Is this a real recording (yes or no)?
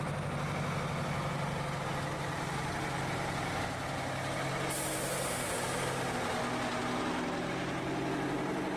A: yes